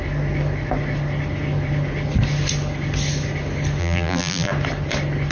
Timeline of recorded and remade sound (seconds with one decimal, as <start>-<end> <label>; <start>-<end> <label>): 0.0-3.8 recorded; 3.8-4.5 remade; 4.5-5.3 recorded